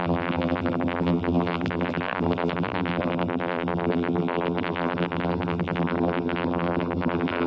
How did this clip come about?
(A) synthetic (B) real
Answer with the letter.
A